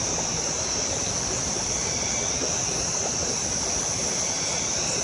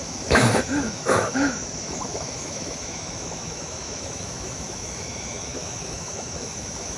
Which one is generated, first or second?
second